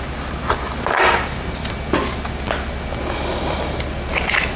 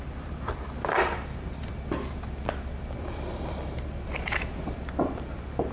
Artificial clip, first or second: second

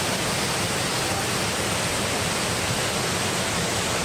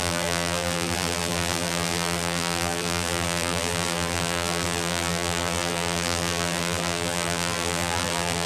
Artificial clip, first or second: second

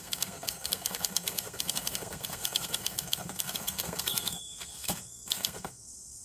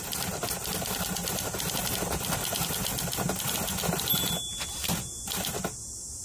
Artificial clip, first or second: first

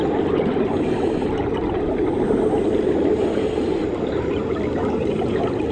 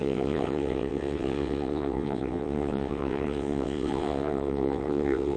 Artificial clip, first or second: second